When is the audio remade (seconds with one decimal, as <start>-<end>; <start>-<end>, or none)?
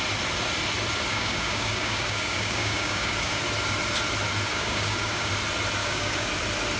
1.1-3.4; 4.5-5.3; 5.8-6.3